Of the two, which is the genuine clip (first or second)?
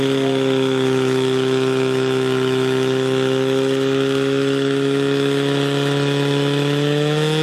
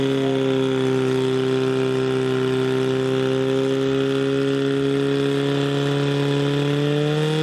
second